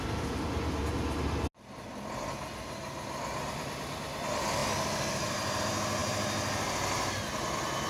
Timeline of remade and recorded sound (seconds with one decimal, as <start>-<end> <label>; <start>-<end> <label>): 0.0-7.9 recorded